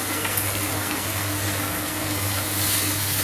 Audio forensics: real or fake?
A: fake